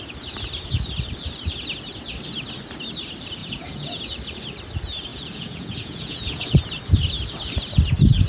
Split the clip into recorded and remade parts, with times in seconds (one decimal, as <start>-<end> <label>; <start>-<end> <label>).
0.0-3.4 recorded; 3.4-4.0 remade; 4.0-5.1 recorded; 5.1-6.6 remade; 6.6-8.3 recorded